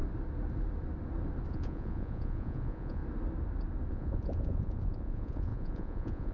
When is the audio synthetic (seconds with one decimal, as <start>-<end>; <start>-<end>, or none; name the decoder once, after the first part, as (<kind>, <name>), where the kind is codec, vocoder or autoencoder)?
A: 1.5-3.0 (vocoder, Vocos); 3.9-6.3